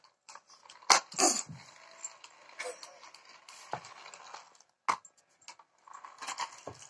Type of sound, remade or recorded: recorded